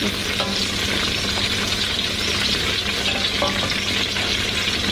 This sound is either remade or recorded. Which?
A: recorded